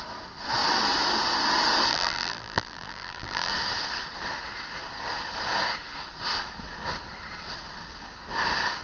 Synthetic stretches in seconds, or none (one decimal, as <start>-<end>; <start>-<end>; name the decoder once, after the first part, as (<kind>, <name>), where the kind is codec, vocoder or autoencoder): 1.9-3.5 (vocoder, BigVGAN v2)